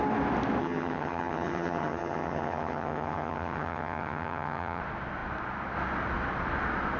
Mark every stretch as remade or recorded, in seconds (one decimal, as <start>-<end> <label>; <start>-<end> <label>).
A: 0.0-0.6 recorded; 0.6-4.8 remade; 4.8-7.0 recorded